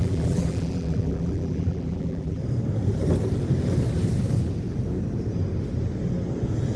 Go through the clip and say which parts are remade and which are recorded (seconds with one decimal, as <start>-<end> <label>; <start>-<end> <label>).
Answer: 0.0-2.4 remade; 2.4-6.8 recorded